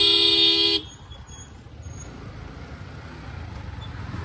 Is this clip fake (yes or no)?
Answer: no